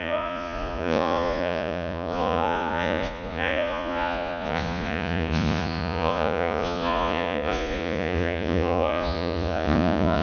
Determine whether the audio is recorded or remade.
remade